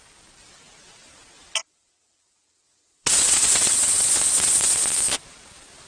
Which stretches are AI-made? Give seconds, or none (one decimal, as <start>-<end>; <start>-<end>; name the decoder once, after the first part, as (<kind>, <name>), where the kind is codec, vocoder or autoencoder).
1.6-4.8 (vocoder, WaveNeXt)